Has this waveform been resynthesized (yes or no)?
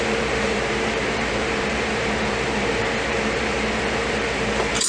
yes